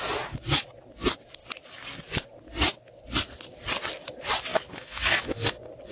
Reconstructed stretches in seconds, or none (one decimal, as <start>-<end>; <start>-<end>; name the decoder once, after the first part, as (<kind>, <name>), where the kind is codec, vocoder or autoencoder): 4.5-5.5 (autoencoder, DAC-VAE)